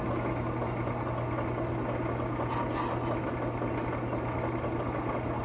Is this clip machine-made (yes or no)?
no